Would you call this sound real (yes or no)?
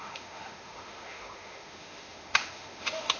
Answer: no